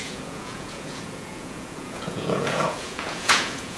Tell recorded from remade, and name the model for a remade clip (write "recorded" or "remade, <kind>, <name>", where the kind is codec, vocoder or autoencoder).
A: remade, vocoder, Vocos